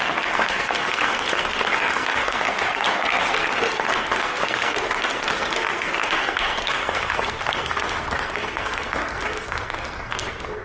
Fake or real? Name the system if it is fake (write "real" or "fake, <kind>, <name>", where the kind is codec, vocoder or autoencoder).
fake, codec, SNAC